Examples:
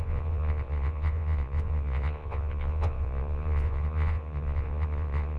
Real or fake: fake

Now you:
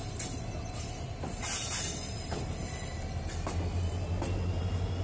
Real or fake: real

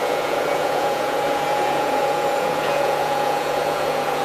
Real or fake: fake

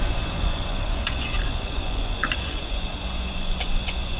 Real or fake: fake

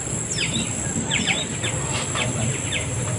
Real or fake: real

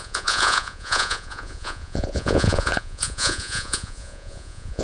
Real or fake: fake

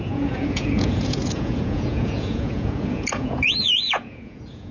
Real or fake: fake